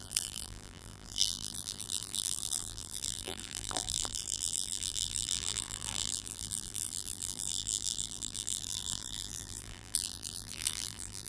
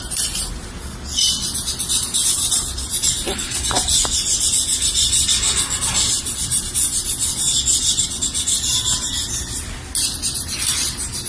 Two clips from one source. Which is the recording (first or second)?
second